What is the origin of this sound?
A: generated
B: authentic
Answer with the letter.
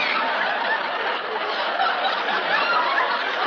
B